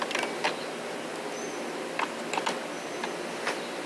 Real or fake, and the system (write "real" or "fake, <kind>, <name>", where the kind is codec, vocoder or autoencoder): real